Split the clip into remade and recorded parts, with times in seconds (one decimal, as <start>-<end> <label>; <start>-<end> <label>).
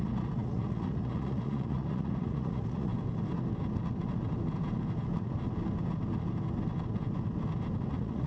0.0-2.9 remade; 2.9-7.9 recorded; 7.9-8.3 remade